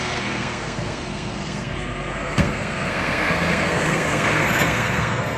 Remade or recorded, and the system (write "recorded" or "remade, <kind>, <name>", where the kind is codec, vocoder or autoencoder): remade, codec, SNAC